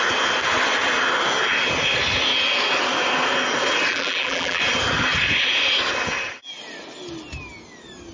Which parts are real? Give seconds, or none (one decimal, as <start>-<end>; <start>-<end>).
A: 0.0-3.9; 4.6-8.1